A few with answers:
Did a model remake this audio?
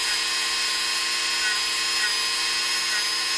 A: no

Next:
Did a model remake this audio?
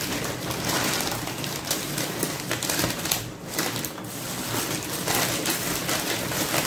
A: no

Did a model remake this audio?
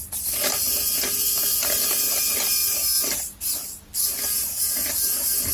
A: no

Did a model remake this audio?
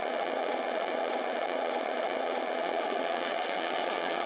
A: yes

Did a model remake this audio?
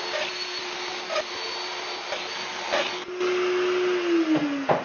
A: no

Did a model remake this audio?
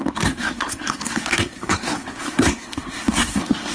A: yes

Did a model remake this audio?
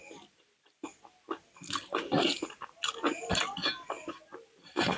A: no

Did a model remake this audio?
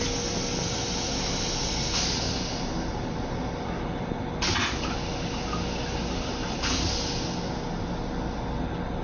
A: no